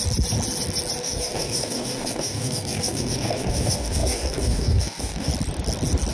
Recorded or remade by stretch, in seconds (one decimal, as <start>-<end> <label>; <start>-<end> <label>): 0.0-1.0 recorded; 1.0-5.3 remade; 5.3-6.1 recorded